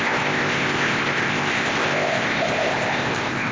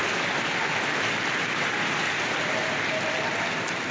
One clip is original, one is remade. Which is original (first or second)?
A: second